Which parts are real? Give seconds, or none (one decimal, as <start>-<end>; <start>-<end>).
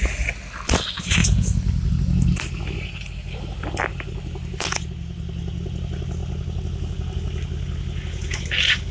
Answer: 0.0-8.9